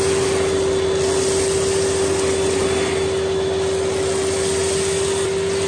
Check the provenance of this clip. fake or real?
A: real